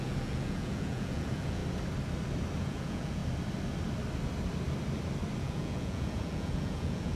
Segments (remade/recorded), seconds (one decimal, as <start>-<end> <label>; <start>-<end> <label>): 0.0-1.6 remade; 1.6-2.6 recorded; 2.6-3.2 remade; 3.2-5.4 recorded; 5.4-7.2 remade